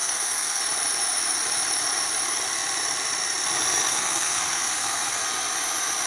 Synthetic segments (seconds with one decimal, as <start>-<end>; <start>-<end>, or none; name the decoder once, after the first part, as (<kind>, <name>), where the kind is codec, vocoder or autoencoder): 0.0-0.6 (codec, SNAC); 3.9-5.2